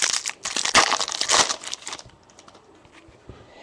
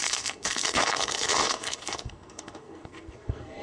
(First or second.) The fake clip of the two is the second